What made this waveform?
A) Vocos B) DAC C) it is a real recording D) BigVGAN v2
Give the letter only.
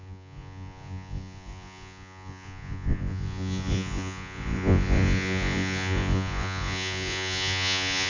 A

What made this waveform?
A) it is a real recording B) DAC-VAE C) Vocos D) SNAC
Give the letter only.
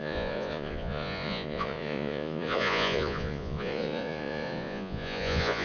C